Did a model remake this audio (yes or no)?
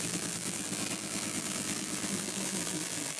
yes